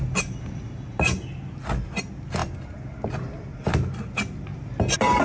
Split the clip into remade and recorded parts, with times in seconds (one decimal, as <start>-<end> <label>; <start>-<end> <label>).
0.0-5.2 recorded